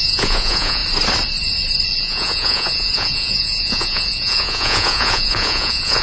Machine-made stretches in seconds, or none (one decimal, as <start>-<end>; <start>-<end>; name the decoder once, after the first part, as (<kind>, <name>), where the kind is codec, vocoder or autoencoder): 0.0-0.8 (vocoder, Vocos); 2.0-6.0

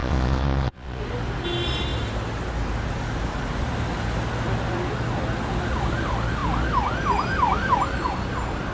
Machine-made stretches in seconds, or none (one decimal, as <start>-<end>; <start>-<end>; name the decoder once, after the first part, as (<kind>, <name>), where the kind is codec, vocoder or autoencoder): 0.0-1.0 (vocoder, Vocos)

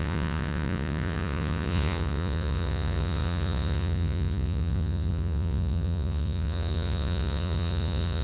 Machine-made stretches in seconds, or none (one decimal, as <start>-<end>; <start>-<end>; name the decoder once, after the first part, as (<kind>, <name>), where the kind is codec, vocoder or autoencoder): 0.0-8.2 (vocoder, Vocos)